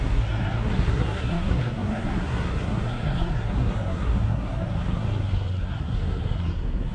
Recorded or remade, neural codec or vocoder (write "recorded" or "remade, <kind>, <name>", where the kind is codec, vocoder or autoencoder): remade, codec, SNAC